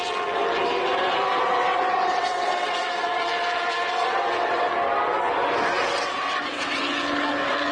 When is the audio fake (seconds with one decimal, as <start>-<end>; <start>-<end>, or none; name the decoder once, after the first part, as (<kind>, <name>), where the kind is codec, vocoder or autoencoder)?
1.5-3.2 (vocoder, WaveNeXt); 4.0-4.7; 5.7-6.8